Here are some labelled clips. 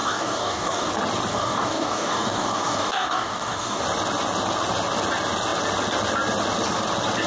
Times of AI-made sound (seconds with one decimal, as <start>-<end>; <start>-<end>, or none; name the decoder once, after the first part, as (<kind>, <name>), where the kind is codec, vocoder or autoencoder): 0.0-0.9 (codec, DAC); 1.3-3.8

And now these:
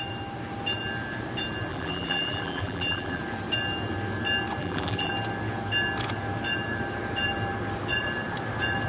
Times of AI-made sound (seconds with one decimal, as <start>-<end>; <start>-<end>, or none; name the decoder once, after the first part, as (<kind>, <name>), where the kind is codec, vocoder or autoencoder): 1.7-3.2 (vocoder, BigVGAN v2); 4.6-5.1

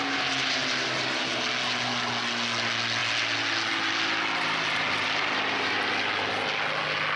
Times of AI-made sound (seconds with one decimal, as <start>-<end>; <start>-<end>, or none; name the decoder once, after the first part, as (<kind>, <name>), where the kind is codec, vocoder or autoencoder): none